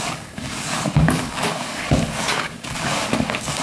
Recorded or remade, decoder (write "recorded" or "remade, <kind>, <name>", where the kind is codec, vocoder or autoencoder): remade, codec, DAC